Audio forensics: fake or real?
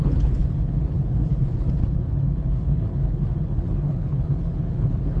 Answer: fake